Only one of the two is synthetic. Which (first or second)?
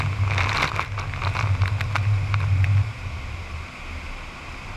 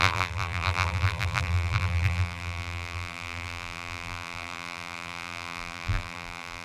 second